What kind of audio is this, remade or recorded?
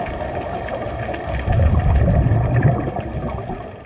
recorded